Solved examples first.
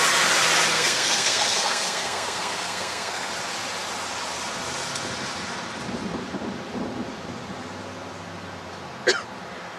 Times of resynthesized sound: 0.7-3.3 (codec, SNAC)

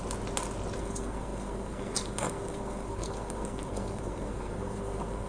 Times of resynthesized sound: 0.8-5.3 (codec, SNAC)

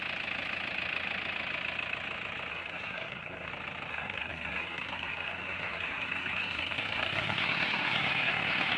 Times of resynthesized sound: 2.5-3.5 (codec, SNAC); 3.9-8.8

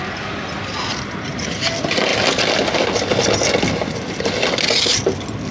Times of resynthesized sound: none

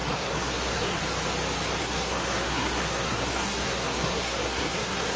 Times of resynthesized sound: 0.0-1.0 (codec, SNAC); 1.8-5.2

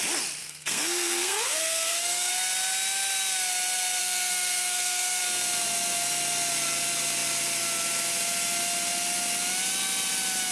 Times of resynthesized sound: 0.4-2.3 (codec, SNAC); 4.0-5.2

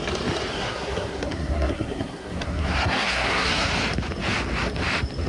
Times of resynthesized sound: 0.5-3.7 (codec, SNAC)